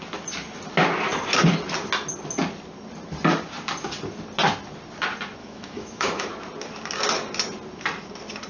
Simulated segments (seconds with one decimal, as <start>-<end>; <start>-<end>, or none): 5.4-6.3